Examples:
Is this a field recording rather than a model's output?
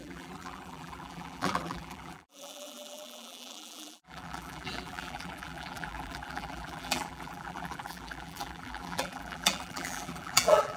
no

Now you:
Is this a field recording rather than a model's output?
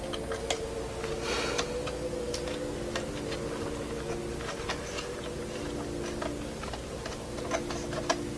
yes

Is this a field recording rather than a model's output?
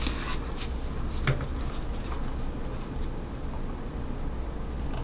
yes